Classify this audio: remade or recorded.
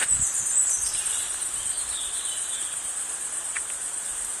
remade